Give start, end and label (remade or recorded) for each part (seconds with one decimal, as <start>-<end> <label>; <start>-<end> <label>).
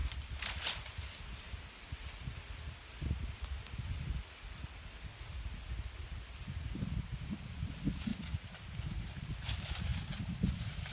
0.0-2.9 remade; 2.9-10.9 recorded